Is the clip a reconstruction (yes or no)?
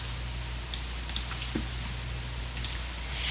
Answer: no